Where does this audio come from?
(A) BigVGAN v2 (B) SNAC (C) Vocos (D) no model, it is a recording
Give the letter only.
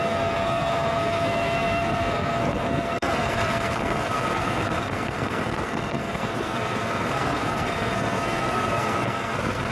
B